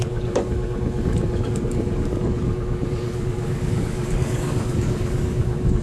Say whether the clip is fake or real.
fake